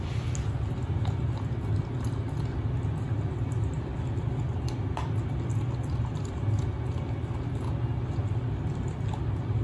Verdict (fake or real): real